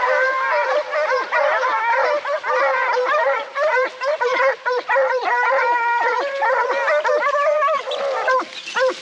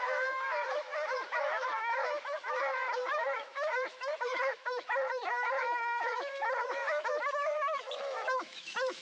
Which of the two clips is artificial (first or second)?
second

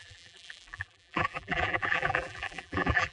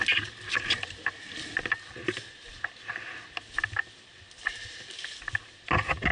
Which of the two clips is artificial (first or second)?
first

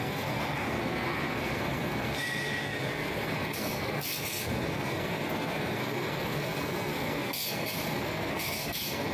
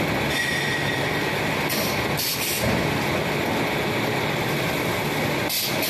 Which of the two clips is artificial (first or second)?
first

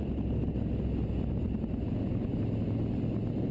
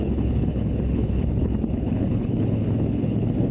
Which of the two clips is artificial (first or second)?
second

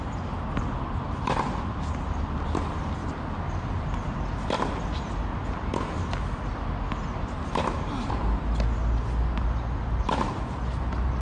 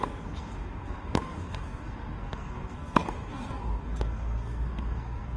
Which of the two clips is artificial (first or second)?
second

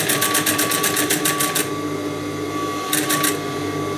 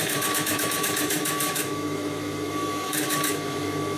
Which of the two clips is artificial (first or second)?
second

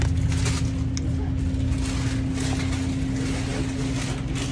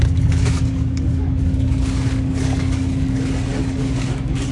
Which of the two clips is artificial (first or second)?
second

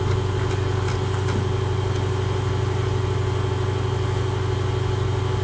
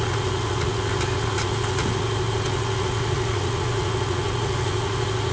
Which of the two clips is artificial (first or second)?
second